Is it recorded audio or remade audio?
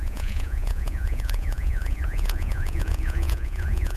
remade